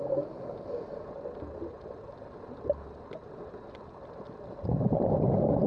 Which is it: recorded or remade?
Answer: recorded